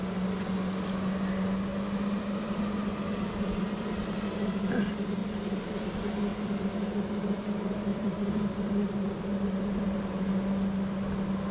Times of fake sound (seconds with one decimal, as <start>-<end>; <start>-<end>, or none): 1.7-2.6; 5.2-5.8; 7.9-10.0

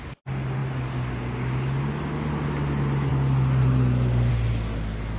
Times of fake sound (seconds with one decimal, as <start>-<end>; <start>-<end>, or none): none

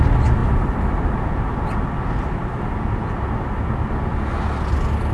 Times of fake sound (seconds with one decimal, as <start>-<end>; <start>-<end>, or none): none

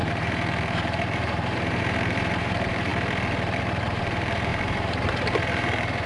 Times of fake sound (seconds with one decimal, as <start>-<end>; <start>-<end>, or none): 0.0-2.9; 3.6-6.1

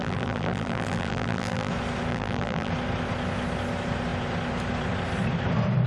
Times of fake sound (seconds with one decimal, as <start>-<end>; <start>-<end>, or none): 0.0-1.7; 2.1-2.7

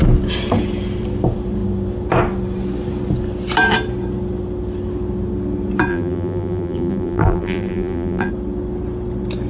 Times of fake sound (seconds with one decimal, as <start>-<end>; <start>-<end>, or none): 5.9-8.3